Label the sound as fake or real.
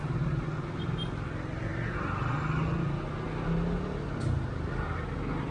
real